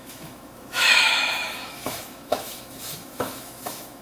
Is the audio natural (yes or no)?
no